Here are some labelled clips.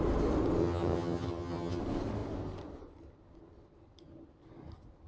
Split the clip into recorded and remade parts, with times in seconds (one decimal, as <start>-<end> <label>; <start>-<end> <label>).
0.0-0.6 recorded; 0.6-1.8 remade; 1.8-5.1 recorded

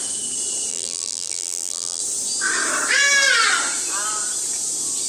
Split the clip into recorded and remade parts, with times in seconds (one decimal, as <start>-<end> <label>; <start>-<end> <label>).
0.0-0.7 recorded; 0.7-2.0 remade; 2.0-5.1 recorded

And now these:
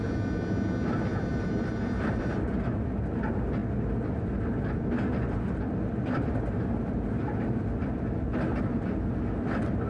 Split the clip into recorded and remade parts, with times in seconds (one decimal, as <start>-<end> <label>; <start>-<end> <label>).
0.0-1.1 recorded; 1.1-2.2 remade; 2.2-9.9 recorded

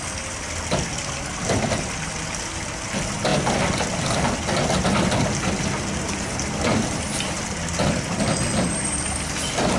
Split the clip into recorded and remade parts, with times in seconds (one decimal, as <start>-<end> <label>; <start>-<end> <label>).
0.0-9.8 recorded